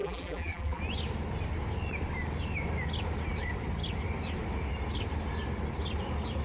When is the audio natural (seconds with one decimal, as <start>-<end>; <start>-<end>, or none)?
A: 0.8-6.4